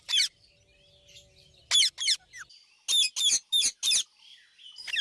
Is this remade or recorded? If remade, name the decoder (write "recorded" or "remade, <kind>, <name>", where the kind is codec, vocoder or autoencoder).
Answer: recorded